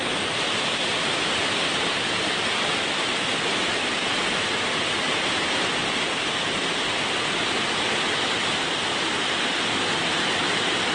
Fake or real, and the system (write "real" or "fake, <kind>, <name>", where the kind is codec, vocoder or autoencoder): real